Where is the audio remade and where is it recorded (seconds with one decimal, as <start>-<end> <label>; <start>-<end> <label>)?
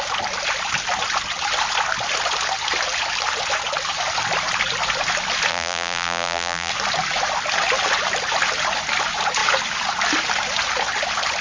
0.0-5.5 recorded; 5.5-6.7 remade; 6.7-11.4 recorded